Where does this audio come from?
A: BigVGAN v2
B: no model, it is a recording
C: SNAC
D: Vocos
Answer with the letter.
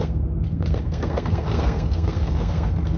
C